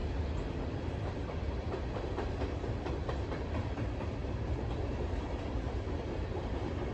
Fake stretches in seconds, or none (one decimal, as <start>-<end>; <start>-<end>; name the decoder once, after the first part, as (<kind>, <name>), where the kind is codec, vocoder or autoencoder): 0.0-4.2 (vocoder, BigVGAN v2); 4.9-6.9